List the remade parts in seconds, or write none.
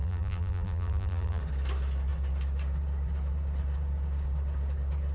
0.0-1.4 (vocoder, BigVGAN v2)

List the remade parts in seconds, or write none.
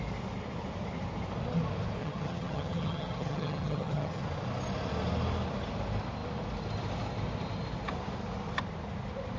2.0-4.2 (vocoder, HiFi-GAN)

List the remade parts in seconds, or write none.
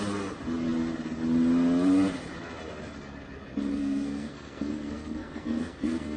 3.7-6.2 (codec, SNAC)